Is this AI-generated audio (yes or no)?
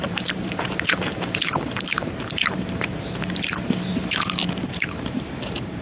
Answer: yes